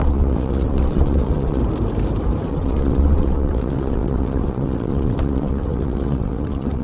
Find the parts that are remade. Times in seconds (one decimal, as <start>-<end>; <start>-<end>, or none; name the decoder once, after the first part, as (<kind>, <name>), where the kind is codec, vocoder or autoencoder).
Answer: 0.0-1.6 (vocoder, WaveNeXt); 2.5-6.8